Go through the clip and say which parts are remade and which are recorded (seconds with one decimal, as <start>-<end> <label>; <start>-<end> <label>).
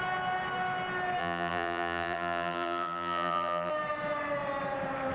0.0-1.2 recorded; 1.2-3.7 remade; 3.7-5.1 recorded